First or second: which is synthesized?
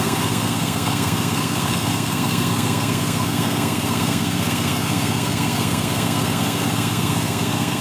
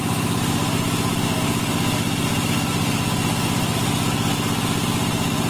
first